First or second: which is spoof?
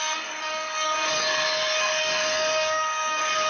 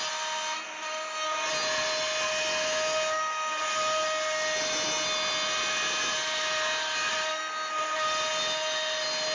first